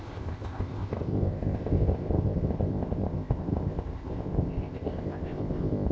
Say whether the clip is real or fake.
fake